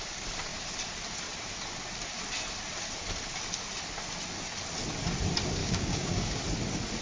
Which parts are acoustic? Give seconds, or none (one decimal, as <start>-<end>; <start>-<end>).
0.0-5.6; 6.4-7.0